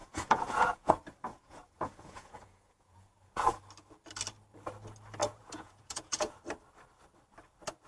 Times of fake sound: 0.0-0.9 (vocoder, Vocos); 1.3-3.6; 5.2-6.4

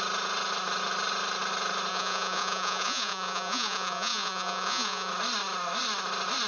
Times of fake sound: 1.9-5.1 (vocoder, Vocos)